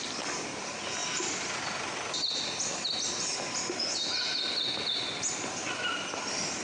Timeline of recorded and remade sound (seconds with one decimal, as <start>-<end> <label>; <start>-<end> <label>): 0.0-6.6 recorded